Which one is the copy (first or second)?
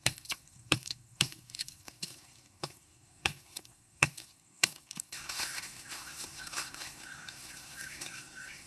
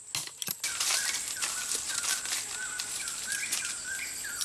first